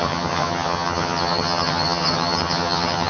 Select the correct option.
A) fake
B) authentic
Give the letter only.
A